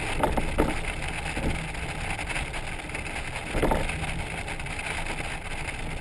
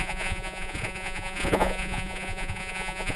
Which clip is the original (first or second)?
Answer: first